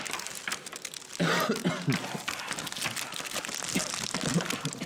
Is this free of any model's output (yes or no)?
yes